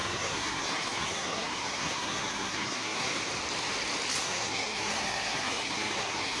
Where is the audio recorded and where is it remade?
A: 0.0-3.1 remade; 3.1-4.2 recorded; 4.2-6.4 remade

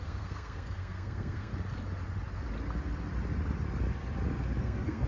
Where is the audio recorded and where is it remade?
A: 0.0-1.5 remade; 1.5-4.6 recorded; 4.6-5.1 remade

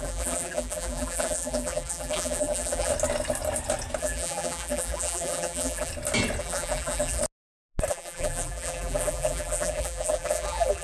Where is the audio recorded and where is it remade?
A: 0.0-2.9 remade; 2.9-4.0 recorded; 4.0-5.9 remade; 5.9-6.4 recorded; 6.4-7.2 remade; 7.2-7.9 recorded; 7.9-10.8 remade

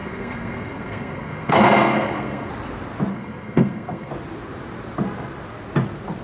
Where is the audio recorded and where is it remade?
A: 0.0-2.5 remade; 2.5-3.1 recorded; 3.1-4.1 remade; 4.1-6.2 recorded